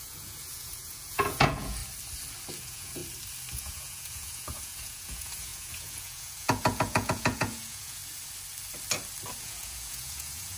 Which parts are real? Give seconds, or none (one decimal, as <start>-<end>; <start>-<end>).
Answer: 1.8-2.6; 3.0-3.5; 8.0-9.4